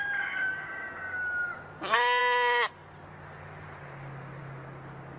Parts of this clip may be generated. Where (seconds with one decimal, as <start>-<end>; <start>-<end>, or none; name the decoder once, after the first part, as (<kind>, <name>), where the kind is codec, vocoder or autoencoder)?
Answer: none

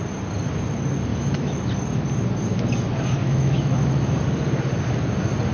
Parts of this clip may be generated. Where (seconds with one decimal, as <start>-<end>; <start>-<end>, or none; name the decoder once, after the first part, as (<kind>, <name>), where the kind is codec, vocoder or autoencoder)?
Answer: 1.1-1.7 (autoencoder, DAC-VAE); 3.2-4.1

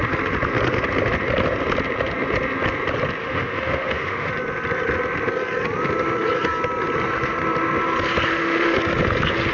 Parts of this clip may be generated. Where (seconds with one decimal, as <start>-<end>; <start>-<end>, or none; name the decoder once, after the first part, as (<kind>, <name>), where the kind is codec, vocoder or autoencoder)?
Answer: 3.2-4.3 (autoencoder, DAC-VAE); 8.3-8.8

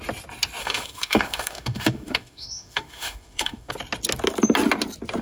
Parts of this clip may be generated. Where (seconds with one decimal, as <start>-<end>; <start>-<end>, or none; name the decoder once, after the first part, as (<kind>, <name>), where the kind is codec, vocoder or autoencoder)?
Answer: 0.6-3.7 (autoencoder, DAC-VAE)

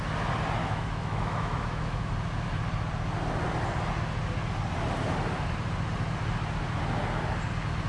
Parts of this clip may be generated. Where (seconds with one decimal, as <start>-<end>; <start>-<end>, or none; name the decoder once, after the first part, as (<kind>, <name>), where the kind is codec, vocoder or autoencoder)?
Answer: 0.6-2.1 (autoencoder, DAC-VAE)